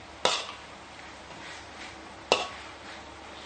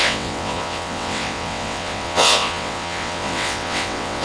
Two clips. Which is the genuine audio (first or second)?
first